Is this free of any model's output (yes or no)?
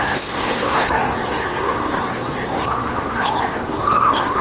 no